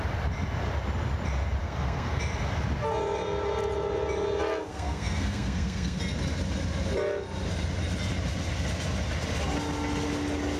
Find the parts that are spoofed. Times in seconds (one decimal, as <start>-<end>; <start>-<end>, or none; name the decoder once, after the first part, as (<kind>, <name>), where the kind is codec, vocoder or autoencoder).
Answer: 1.6-2.2 (codec, SNAC); 4.7-6.0